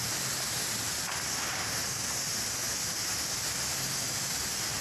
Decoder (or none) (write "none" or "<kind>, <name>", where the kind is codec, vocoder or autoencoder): none